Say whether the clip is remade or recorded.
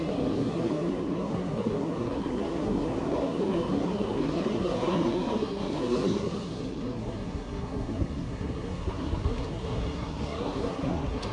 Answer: remade